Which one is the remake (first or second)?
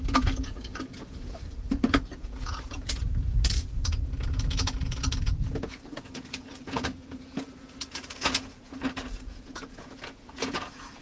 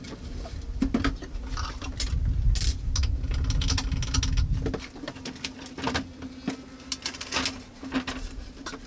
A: first